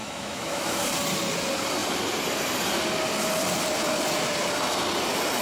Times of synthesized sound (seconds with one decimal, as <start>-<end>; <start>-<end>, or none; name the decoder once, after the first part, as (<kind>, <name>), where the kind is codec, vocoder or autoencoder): 0.0-0.8 (autoencoder, DAC-VAE)